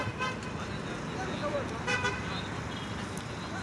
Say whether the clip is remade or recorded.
recorded